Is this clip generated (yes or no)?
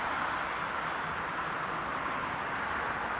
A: no